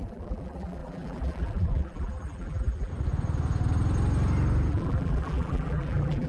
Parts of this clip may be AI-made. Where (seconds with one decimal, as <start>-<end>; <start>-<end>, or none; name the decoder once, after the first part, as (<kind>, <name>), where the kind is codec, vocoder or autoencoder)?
0.0-2.9 (vocoder, BigVGAN v2); 4.7-6.3